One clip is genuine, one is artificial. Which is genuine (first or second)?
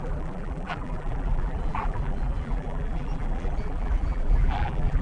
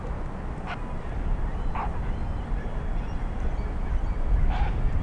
second